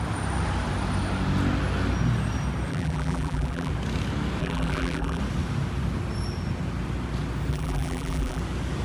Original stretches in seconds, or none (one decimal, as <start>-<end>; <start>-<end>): 0.0-2.7; 3.7-4.4; 5.2-7.5; 8.4-8.8